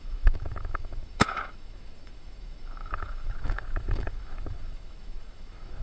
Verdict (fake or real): fake